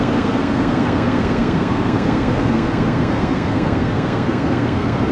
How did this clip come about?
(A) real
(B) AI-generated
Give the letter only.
B